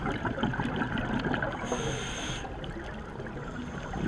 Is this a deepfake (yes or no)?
no